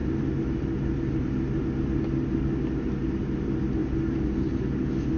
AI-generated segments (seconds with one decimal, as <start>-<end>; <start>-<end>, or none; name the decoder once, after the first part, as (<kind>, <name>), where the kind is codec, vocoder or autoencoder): none